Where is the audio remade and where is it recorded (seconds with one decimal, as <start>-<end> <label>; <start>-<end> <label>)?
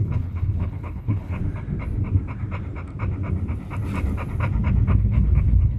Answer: 0.0-1.4 remade; 1.4-4.9 recorded; 4.9-5.8 remade